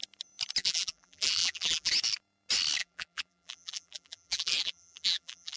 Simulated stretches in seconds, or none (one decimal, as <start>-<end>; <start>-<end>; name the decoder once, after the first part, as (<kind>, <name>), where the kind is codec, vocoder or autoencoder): 0.6-1.9 (vocoder, BigVGAN v2); 2.8-5.6